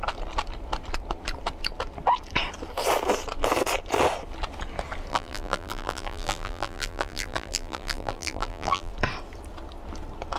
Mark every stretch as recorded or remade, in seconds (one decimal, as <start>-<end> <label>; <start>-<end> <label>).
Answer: 0.0-5.1 recorded; 5.1-8.9 remade; 8.9-10.4 recorded